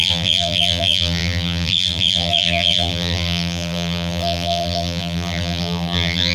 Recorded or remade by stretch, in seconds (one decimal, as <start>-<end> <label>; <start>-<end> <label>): 0.0-6.3 remade